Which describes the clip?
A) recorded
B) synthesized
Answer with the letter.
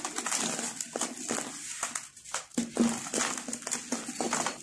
A